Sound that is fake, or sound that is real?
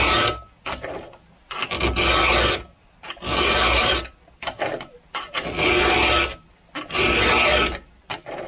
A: real